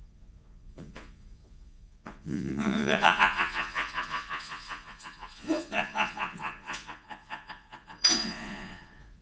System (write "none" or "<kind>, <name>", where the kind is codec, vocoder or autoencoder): vocoder, Vocos